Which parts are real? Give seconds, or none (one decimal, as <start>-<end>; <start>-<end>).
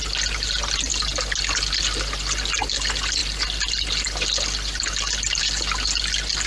0.0-6.5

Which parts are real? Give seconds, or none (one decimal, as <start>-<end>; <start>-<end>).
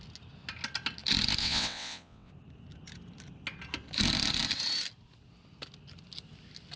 0.0-1.4; 2.3-6.8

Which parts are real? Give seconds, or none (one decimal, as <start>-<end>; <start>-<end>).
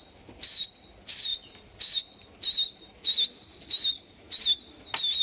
0.0-5.2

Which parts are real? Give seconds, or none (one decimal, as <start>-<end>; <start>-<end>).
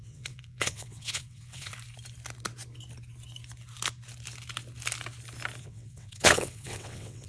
1.7-5.6